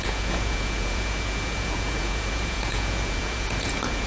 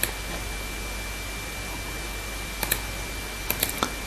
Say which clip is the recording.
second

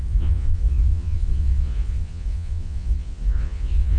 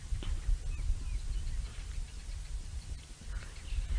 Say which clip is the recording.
second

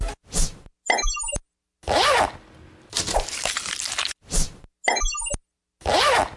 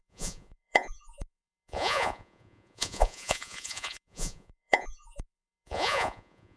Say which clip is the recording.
first